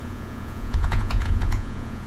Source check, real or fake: fake